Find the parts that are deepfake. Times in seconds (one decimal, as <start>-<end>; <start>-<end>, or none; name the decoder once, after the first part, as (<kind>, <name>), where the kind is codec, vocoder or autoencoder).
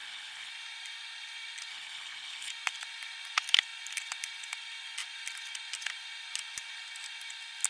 0.0-0.5 (codec, HILCodec); 1.7-2.5